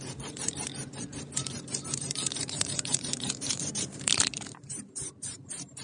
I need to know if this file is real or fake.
fake